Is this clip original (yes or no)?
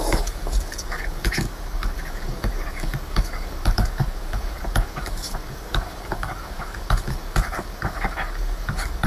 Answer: no